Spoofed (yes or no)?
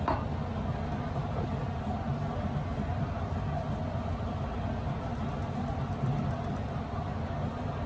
no